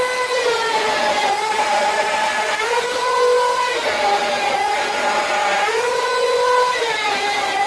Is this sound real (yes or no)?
yes